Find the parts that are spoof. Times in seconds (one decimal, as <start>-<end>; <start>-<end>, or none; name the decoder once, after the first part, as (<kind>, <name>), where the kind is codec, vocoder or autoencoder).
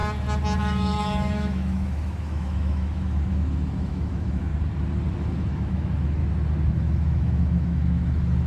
0.6-4.5 (autoencoder, DAC-VAE); 5.1-6.2; 6.7-8.5